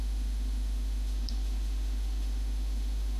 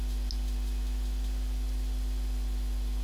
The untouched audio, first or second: second